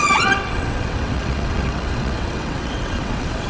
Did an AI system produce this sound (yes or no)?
yes